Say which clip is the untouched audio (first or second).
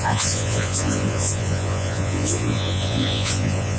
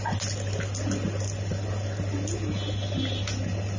second